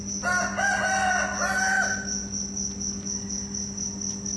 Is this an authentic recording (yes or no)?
yes